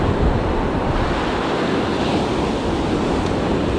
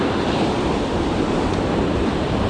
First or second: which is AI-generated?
second